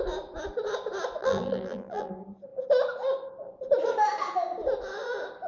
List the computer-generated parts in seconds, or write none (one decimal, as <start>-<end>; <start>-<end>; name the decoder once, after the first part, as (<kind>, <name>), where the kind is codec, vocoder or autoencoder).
1.2-2.1 (vocoder, BigVGAN v2)